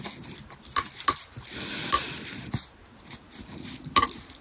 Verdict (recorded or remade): recorded